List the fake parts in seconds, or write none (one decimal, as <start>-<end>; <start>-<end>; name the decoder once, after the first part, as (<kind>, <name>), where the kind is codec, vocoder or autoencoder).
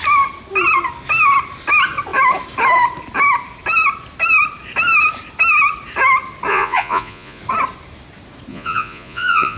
6.5-7.4 (vocoder, Vocos); 8.5-9.6